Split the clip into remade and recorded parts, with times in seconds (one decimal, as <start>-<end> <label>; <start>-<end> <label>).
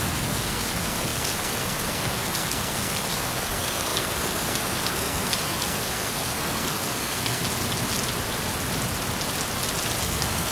0.0-7.4 remade; 7.4-10.0 recorded; 10.0-10.5 remade